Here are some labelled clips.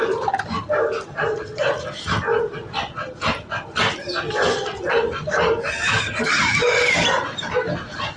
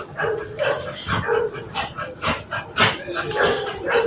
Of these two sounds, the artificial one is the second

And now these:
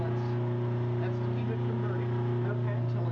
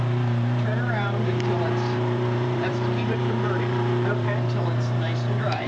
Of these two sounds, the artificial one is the second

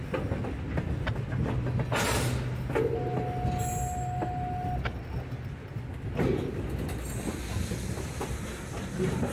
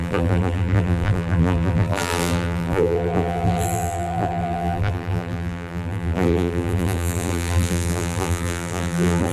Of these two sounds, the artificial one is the second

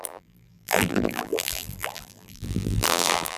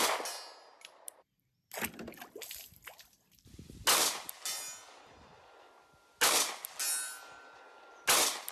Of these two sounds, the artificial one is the first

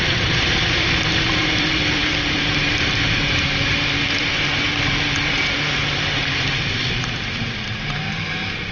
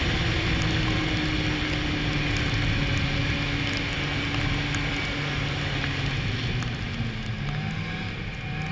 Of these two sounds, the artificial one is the first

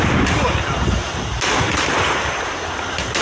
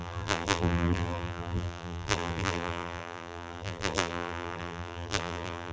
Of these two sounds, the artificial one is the second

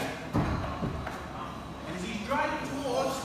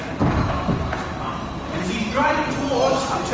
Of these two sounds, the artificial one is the second